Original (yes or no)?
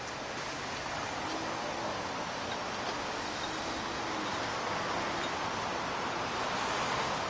yes